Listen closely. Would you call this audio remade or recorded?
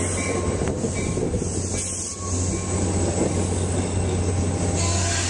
recorded